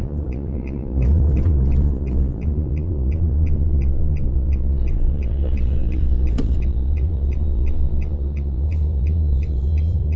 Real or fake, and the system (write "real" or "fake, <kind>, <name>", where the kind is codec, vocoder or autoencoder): fake, vocoder, Vocos